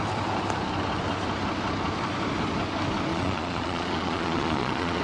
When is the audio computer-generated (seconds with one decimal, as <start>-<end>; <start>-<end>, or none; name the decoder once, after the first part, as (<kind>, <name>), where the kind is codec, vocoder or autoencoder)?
3.1-5.0 (vocoder, Vocos)